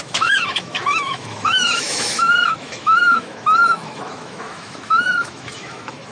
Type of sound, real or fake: fake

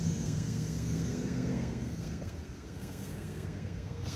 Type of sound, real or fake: fake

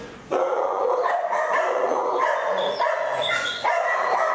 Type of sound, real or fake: fake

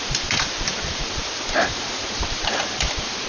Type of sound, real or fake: fake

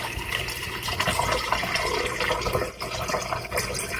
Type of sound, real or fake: real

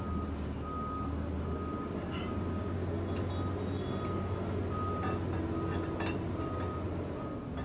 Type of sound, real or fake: real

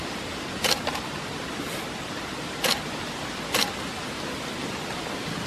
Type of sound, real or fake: real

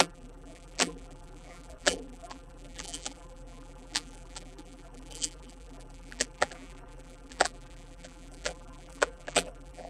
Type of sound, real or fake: fake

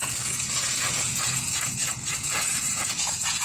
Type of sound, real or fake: fake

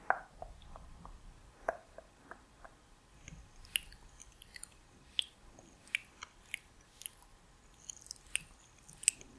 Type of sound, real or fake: real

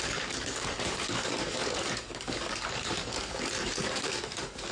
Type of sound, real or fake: fake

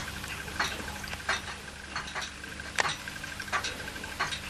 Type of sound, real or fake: real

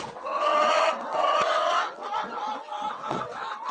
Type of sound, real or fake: fake